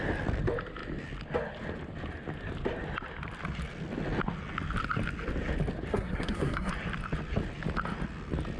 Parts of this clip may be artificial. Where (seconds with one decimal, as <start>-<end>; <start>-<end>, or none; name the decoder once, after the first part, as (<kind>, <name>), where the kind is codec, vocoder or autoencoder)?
5.9-6.7 (codec, SNAC)